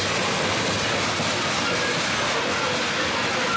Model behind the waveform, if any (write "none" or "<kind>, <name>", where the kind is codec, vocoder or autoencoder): none